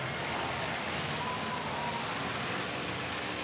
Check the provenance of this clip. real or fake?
real